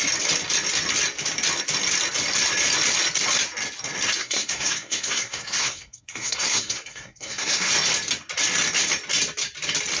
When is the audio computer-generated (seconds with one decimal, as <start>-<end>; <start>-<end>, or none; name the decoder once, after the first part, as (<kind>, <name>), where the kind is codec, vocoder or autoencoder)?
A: 4.2-7.7 (codec, SNAC)